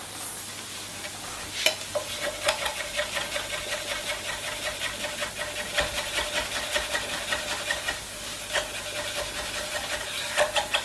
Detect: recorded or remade recorded